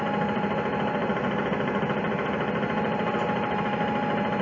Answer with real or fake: real